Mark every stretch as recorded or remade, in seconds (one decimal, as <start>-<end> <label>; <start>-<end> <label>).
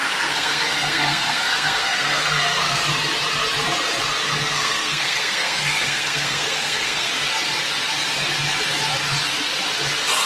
0.0-2.8 remade; 2.8-4.5 recorded; 4.5-7.1 remade; 7.1-10.3 recorded